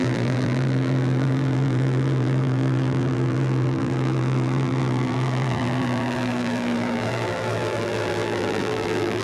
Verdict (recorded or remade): remade